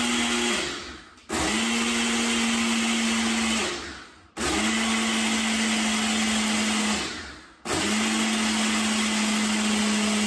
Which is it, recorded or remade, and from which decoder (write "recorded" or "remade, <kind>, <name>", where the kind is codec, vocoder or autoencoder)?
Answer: recorded